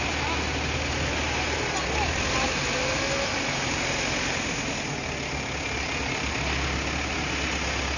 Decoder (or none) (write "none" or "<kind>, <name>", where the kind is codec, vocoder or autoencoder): none